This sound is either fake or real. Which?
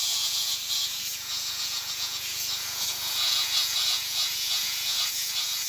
fake